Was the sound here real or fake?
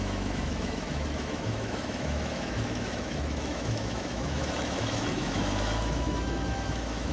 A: fake